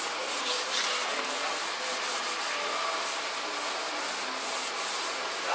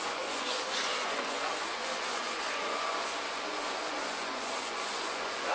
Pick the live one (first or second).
first